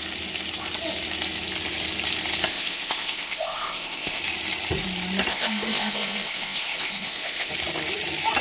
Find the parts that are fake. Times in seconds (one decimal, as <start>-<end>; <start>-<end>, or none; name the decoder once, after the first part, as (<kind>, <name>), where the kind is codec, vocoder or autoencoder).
2.5-4.2 (codec, ZipCodec); 5.3-7.5